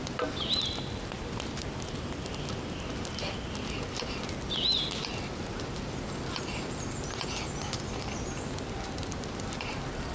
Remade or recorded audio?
recorded